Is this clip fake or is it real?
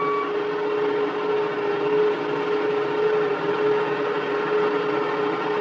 real